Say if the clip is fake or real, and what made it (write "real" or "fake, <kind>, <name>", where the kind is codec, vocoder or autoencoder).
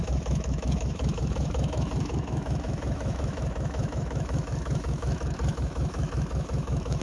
fake, autoencoder, DAC-VAE